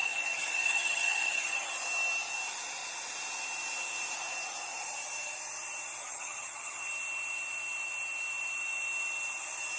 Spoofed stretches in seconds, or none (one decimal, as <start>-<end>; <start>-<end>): 0.0-1.7; 6.0-6.8